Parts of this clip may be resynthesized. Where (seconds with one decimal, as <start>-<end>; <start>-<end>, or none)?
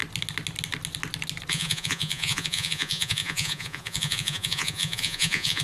1.5-5.6